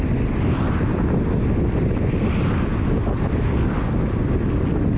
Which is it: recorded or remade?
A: recorded